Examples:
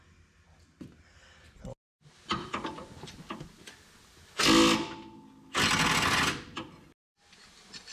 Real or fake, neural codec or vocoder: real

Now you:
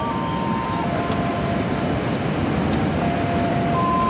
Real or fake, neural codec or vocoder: fake, vocoder, BigVGAN v2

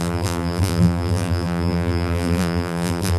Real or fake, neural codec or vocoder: fake, vocoder, BigVGAN v2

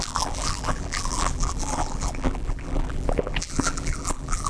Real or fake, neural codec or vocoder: fake, vocoder, BigVGAN v2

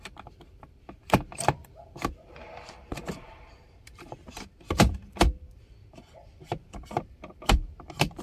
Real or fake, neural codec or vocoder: fake, vocoder, BigVGAN v2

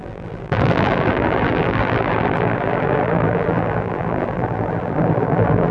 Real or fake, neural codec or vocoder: fake, vocoder, BigVGAN v2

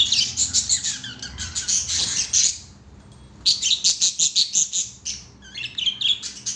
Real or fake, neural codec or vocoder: real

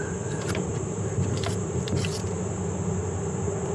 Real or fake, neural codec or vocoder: real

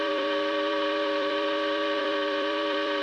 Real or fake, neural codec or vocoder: fake, vocoder, BigVGAN v2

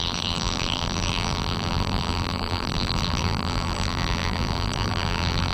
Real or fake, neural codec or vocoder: fake, vocoder, BigVGAN v2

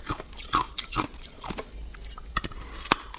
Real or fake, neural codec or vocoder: real